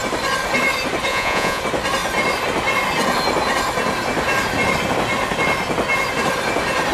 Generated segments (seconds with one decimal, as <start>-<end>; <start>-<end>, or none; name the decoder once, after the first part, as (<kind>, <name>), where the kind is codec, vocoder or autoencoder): 1.1-1.6 (vocoder, Vocos)